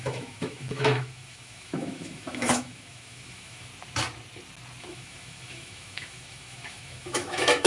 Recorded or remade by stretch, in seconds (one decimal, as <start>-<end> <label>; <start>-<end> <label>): 0.0-3.7 remade; 3.7-4.8 recorded; 4.8-7.7 remade